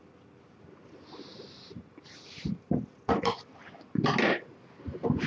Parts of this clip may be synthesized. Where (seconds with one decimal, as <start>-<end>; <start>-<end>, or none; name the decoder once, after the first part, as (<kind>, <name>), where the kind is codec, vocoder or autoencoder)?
none

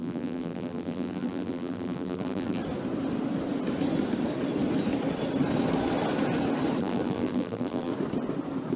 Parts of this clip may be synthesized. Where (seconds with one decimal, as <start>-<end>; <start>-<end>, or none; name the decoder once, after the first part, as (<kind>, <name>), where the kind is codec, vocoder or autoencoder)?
0.0-2.6 (vocoder, BigVGAN v2); 6.8-7.9

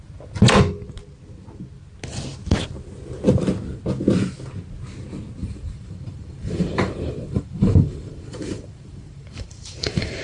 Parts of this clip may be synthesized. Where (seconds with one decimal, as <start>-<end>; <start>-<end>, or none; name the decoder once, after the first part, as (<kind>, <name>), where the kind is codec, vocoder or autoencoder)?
5.4-10.2 (vocoder, BigVGAN v2)

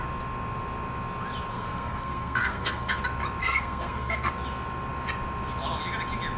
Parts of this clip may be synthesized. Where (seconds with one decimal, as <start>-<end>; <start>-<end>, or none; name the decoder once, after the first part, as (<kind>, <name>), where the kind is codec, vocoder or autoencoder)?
1.5-3.0 (codec, SNAC); 3.4-4.3

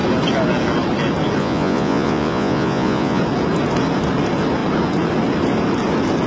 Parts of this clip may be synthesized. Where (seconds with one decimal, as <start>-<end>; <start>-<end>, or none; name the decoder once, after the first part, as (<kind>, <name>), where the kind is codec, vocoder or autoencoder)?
1.4-3.2 (vocoder, Vocos)

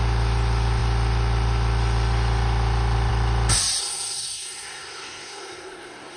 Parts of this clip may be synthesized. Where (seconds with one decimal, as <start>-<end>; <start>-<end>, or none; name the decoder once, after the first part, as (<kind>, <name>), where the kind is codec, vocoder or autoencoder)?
3.8-6.2 (codec, SNAC)